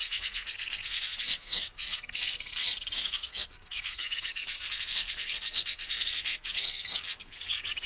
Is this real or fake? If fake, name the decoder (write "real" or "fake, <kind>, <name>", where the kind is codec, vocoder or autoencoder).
fake, codec, SNAC